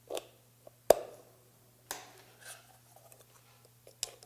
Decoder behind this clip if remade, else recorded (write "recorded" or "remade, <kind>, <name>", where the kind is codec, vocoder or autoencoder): recorded